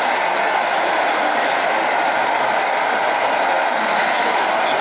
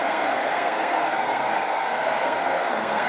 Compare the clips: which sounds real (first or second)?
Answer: first